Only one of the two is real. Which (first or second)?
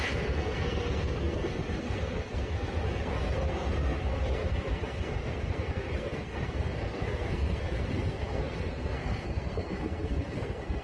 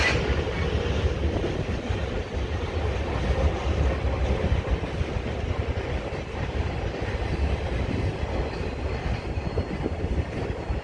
second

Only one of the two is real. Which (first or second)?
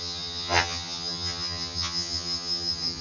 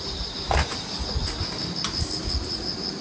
second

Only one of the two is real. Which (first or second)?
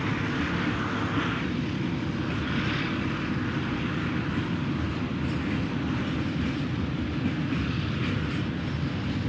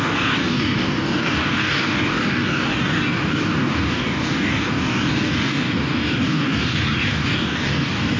first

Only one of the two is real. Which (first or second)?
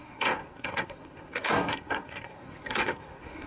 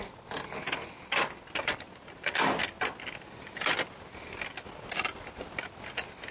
second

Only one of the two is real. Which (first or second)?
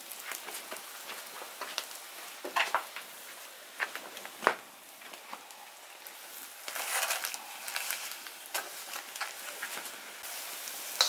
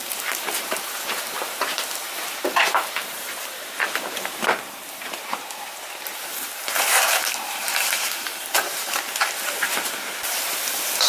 first